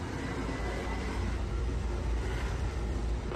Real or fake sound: fake